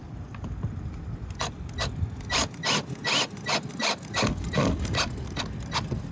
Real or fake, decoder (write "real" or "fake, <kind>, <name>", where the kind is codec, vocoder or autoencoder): real